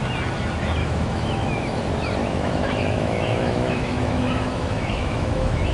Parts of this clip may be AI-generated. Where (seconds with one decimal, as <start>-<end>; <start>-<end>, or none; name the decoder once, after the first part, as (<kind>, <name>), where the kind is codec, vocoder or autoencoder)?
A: 0.8-1.8 (autoencoder, DAC-VAE); 2.2-5.7